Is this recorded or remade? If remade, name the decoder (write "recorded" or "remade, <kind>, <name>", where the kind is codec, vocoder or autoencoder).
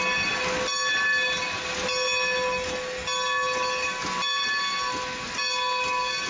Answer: recorded